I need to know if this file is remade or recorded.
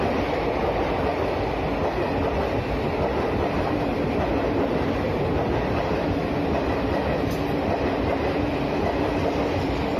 recorded